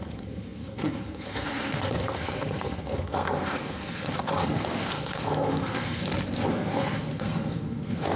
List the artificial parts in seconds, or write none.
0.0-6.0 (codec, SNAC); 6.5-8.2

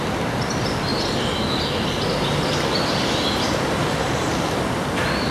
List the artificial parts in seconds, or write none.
none

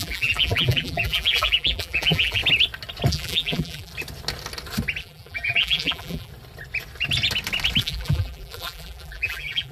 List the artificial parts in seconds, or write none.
0.0-2.4 (vocoder, BigVGAN v2); 3.1-3.9; 5.0-6.3; 7.8-9.7